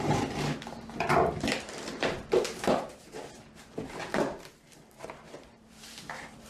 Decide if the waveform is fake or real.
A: fake